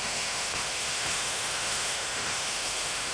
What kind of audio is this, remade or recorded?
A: remade